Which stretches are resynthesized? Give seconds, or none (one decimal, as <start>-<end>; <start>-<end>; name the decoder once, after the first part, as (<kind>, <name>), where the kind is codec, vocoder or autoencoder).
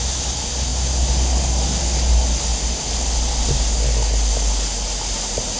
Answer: none